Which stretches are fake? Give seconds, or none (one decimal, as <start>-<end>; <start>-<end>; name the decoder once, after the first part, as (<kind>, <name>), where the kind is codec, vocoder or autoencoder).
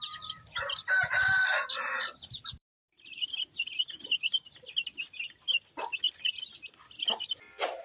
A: 0.0-2.7 (vocoder, BigVGAN v2)